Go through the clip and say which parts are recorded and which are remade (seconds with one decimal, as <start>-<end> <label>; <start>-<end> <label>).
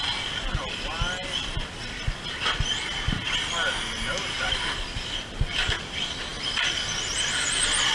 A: 0.0-7.9 recorded